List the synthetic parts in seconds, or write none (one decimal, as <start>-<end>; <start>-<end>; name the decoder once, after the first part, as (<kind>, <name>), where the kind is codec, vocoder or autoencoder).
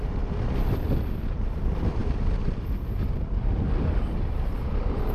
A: none